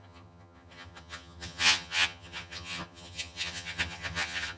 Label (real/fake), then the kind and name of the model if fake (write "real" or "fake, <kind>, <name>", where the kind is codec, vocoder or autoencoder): fake, vocoder, HiFi-GAN